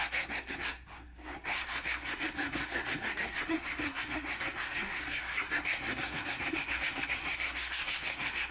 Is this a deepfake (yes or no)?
yes